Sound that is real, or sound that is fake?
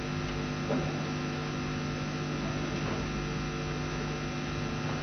real